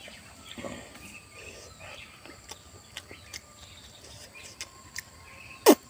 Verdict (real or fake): real